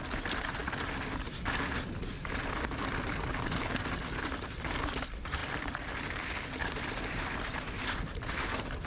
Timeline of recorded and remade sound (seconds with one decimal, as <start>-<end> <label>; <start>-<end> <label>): 0.0-5.4 recorded; 5.4-6.1 remade; 6.1-8.9 recorded